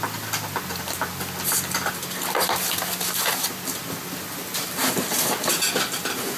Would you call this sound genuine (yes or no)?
yes